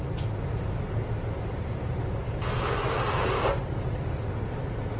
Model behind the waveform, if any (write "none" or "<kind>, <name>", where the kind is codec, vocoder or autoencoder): none